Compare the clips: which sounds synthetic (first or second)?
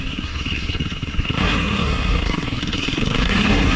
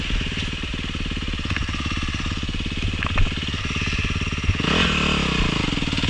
first